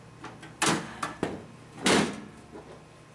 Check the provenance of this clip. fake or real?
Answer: real